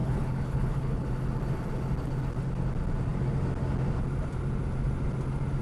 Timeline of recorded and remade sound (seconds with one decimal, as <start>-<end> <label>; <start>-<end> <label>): 0.0-1.1 remade; 1.1-5.6 recorded